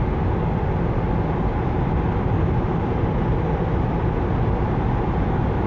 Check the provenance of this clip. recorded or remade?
recorded